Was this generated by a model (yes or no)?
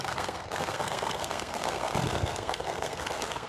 yes